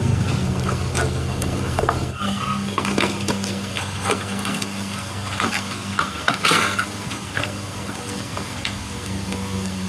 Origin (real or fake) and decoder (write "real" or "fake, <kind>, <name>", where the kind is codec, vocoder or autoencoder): fake, codec, SNAC